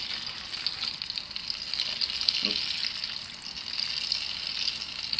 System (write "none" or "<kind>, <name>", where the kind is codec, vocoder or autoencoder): none